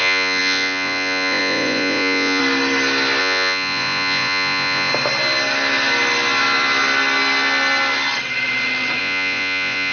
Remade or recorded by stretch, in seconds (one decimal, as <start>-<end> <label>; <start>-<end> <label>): 0.0-2.4 remade; 2.4-3.2 recorded; 3.2-4.9 remade; 4.9-9.0 recorded; 9.0-9.9 remade